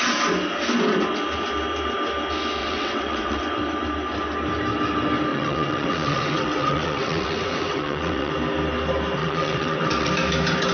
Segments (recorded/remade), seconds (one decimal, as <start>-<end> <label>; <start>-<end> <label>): 0.0-2.6 recorded; 2.6-3.4 remade; 3.4-5.3 recorded; 5.3-8.3 remade; 8.3-9.2 recorded; 9.2-10.1 remade; 10.1-10.7 recorded